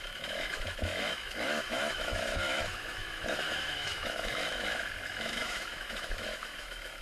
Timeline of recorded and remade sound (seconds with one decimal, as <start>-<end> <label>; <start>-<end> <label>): 0.0-7.0 remade